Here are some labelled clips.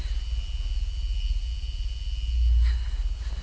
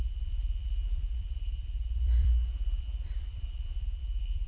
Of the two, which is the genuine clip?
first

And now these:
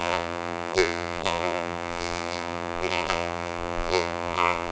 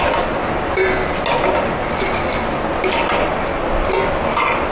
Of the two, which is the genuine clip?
second